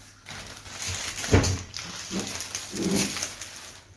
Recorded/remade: recorded